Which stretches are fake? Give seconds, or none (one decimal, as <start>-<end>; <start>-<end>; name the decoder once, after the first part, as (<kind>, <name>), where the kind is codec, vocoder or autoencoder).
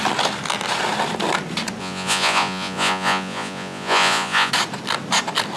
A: 1.8-4.5 (vocoder, Vocos)